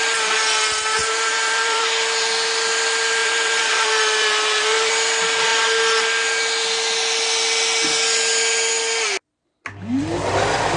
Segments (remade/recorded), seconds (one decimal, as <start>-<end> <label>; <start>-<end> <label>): 0.0-1.0 recorded; 1.0-1.8 remade; 1.8-3.2 recorded; 3.2-4.9 remade; 4.9-10.8 recorded